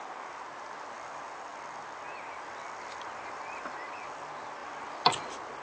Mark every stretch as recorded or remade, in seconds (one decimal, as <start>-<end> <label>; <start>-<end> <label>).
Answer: 0.0-5.6 recorded